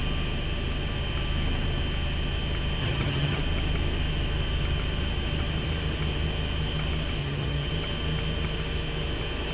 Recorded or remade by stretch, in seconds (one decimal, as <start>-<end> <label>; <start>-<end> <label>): 0.0-2.8 recorded; 2.8-3.4 remade; 3.4-7.2 recorded; 7.2-7.7 remade; 7.7-9.5 recorded